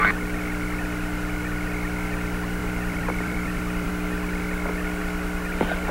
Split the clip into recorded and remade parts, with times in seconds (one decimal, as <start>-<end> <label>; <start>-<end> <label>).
0.0-2.6 recorded; 2.6-3.9 remade; 3.9-5.9 recorded